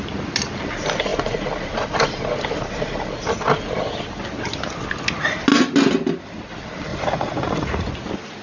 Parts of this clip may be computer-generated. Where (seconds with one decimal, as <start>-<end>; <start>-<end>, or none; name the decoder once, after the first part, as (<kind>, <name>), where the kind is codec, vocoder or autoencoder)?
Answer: 6.9-7.9 (vocoder, Vocos)